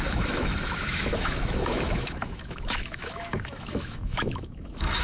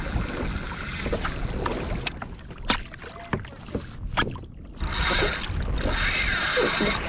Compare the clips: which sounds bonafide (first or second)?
second